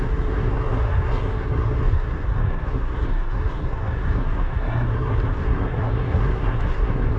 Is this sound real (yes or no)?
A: no